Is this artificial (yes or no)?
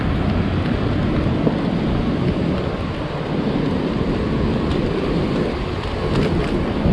yes